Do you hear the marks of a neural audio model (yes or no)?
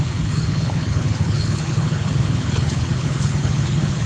yes